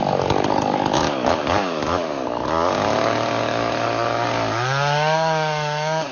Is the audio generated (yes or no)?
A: yes